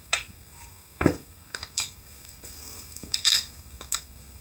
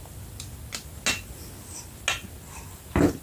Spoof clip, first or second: first